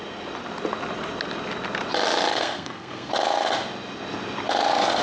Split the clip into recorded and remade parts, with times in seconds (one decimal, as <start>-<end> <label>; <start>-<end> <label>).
0.0-2.3 recorded; 2.3-3.1 remade; 3.1-5.0 recorded